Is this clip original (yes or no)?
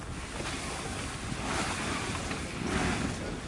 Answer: yes